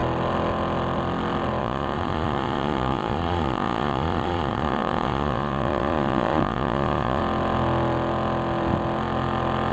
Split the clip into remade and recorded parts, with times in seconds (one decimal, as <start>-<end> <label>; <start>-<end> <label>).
0.0-1.6 recorded; 1.6-7.2 remade; 7.2-9.7 recorded